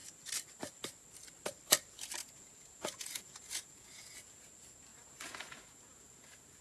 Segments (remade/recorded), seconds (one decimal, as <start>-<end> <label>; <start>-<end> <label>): 0.0-2.2 recorded; 2.2-4.5 remade; 4.5-4.9 recorded; 4.9-6.6 remade

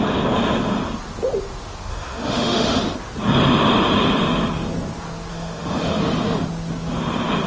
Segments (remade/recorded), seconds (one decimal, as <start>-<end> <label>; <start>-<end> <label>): 0.0-1.9 recorded; 1.9-2.8 remade; 2.8-5.3 recorded; 5.3-6.0 remade; 6.0-7.5 recorded

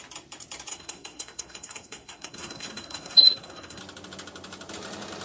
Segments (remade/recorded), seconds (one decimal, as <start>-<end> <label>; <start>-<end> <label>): 0.0-0.7 recorded; 0.7-3.8 remade; 3.8-5.2 recorded

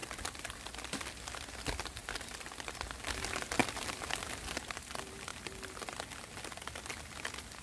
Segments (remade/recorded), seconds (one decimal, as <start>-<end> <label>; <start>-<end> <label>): 0.0-7.6 recorded

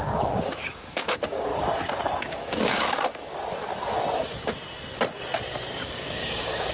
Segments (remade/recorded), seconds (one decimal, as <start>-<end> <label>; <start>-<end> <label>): 0.0-1.5 remade; 1.5-2.2 recorded; 2.2-3.4 remade; 3.4-5.7 recorded; 5.7-6.7 remade

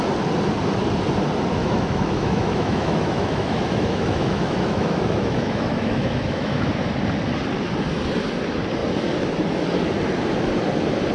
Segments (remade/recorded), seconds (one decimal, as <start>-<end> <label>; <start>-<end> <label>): 0.0-1.6 recorded; 1.6-6.7 remade; 6.7-11.1 recorded

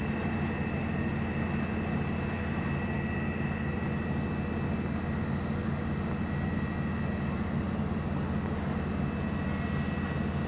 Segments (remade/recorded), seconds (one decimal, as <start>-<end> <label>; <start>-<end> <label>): 0.0-10.5 recorded

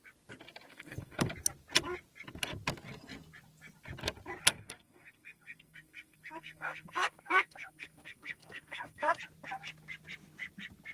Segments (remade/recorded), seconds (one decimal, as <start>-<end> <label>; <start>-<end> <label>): 0.0-0.7 recorded; 0.7-1.3 remade; 1.3-4.5 recorded; 4.5-9.2 remade; 9.2-10.9 recorded